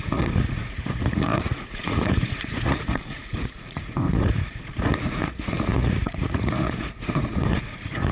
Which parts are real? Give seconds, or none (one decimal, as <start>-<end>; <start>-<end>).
none